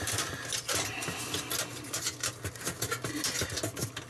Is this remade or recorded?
recorded